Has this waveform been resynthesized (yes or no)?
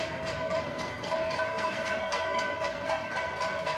yes